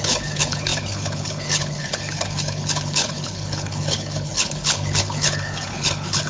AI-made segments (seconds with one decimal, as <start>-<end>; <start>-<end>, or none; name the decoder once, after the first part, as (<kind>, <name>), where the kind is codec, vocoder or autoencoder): 0.0-6.3 (codec, HILCodec)